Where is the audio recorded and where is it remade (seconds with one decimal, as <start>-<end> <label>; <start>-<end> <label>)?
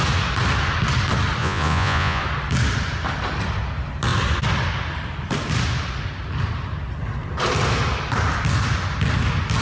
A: 0.0-1.4 recorded; 1.4-2.2 remade; 2.2-9.6 recorded